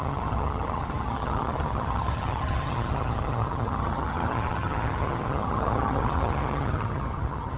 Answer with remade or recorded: remade